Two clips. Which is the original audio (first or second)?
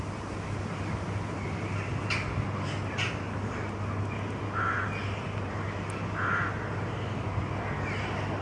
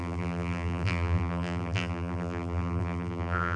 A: first